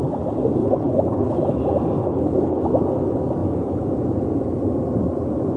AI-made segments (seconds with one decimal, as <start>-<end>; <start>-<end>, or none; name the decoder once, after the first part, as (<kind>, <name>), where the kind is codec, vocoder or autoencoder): 0.6-1.6 (codec, HILCodec); 2.0-2.6